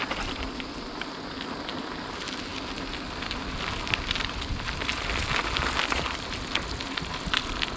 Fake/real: real